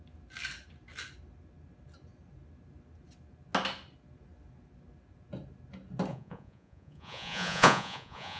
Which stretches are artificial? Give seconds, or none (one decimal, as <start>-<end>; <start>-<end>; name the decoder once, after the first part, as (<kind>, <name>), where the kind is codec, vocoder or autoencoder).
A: 6.1-8.4 (vocoder, Vocos)